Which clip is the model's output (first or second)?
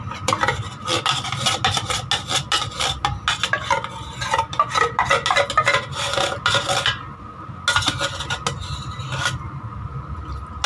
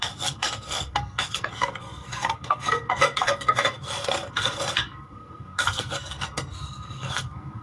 second